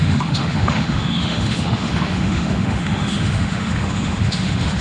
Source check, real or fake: fake